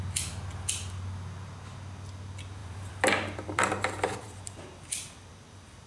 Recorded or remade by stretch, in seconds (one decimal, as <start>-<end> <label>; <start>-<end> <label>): 0.0-2.6 recorded; 2.6-5.9 remade